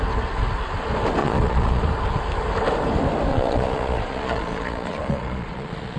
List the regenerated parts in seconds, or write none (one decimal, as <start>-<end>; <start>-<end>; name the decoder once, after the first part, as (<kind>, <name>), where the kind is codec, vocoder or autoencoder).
1.2-1.8 (vocoder, Vocos); 3.3-6.0

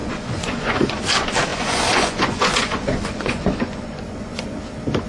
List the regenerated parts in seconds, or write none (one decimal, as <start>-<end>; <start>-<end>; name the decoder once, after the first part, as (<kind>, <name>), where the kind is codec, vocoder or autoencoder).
0.0-1.0 (vocoder, Vocos); 1.5-4.6

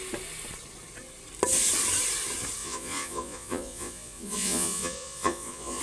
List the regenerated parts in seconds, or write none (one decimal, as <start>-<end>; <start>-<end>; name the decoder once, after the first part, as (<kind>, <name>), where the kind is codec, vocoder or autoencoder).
2.6-5.8 (vocoder, Vocos)

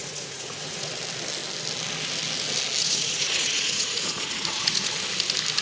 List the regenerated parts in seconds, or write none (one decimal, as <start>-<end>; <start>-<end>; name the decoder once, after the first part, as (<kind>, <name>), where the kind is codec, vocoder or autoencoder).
0.0-0.9 (vocoder, Vocos); 2.8-4.9

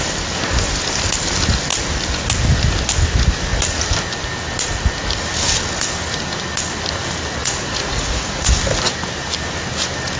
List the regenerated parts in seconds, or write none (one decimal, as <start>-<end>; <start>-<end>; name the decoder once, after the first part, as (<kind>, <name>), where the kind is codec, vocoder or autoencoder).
7.4-8.5 (vocoder, Vocos)

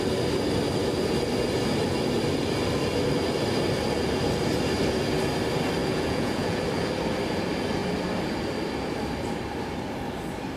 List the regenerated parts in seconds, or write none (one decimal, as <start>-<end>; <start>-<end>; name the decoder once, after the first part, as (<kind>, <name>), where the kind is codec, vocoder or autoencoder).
5.8-6.6 (vocoder, Vocos)